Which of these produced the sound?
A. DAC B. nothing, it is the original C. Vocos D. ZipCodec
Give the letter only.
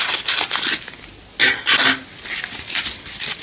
B